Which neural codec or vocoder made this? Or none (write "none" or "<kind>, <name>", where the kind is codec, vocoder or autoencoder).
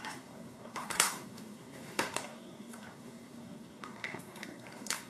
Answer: codec, SNAC